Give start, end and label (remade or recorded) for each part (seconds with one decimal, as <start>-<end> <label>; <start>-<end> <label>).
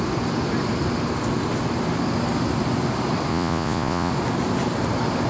0.0-3.3 recorded; 3.3-4.1 remade; 4.1-5.3 recorded